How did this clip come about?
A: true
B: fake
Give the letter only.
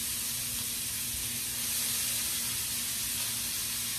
A